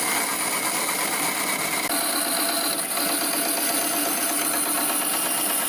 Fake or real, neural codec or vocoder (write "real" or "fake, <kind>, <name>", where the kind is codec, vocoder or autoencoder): real